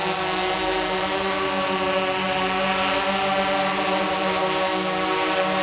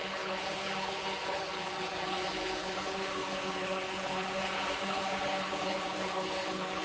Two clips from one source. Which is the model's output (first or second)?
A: second